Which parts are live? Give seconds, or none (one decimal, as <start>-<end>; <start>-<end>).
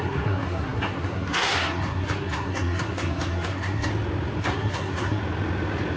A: 3.9-4.4; 5.2-6.0